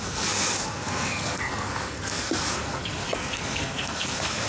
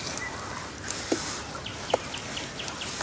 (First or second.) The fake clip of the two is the first